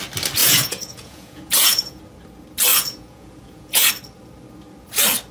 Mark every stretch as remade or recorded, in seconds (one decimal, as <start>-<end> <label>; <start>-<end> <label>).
0.0-0.4 recorded; 0.4-2.0 remade; 2.0-2.7 recorded; 2.7-3.9 remade; 3.9-5.3 recorded